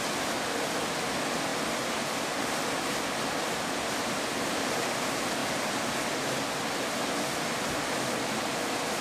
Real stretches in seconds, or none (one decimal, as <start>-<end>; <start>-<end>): 0.0-1.5; 2.4-9.0